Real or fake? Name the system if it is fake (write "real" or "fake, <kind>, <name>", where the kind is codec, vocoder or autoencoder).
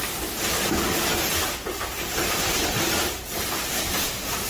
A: fake, vocoder, BigVGAN v2